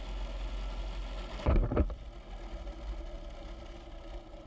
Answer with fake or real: real